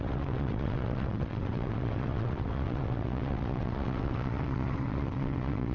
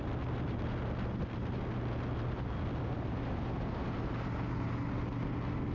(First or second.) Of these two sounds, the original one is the second